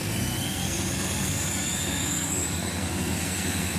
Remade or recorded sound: remade